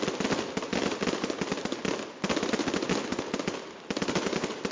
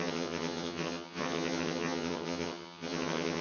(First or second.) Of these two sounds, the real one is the first